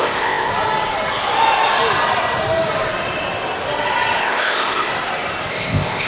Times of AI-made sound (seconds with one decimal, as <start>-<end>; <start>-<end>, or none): 0.0-0.5; 4.2-4.9; 5.5-6.1